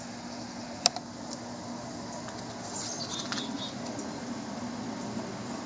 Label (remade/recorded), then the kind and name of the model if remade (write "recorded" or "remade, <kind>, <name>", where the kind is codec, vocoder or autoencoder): recorded